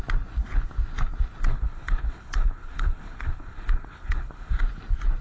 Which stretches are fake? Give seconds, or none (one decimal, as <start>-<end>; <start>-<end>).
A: 1.5-4.6